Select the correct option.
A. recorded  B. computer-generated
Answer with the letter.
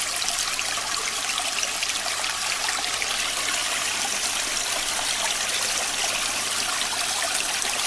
A